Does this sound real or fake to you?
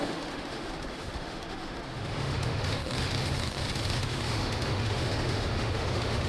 fake